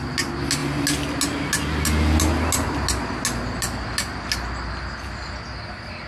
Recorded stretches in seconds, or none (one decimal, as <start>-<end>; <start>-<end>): 0.0-6.1